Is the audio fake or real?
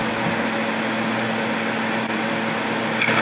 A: real